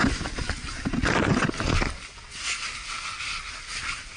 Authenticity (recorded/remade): recorded